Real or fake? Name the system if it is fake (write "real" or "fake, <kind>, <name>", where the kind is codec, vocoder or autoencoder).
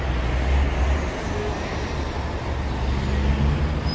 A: real